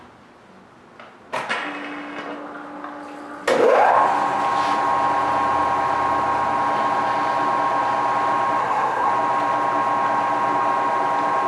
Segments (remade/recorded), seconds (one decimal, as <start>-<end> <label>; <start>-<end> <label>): 0.0-8.6 recorded; 8.6-9.1 remade; 9.1-11.5 recorded